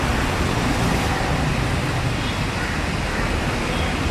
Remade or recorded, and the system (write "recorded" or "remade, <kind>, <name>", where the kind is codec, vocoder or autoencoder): recorded